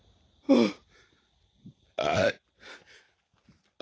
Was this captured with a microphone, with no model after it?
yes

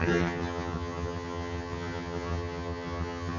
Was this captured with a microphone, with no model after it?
no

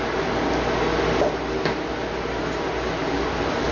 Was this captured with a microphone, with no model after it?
yes